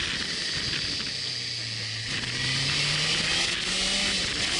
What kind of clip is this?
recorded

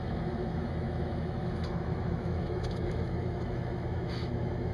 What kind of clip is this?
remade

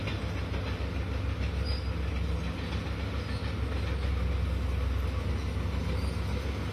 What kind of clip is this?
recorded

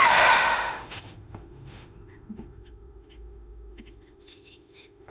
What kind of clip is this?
remade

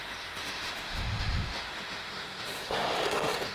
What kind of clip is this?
remade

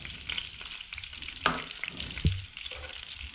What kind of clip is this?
recorded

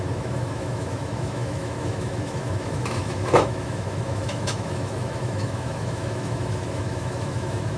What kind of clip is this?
remade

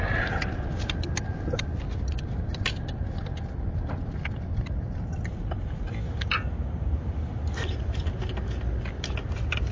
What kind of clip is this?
recorded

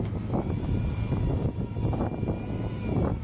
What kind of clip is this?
recorded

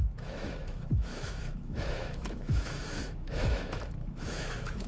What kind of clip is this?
remade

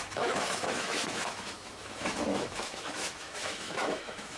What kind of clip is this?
remade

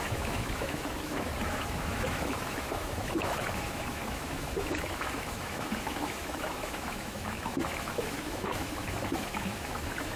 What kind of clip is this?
remade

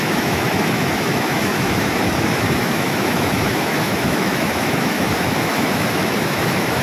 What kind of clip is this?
remade